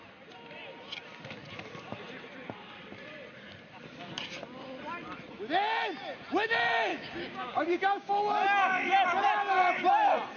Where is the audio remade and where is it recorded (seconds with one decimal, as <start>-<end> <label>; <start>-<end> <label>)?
0.0-6.9 recorded; 6.9-8.1 remade; 8.1-10.4 recorded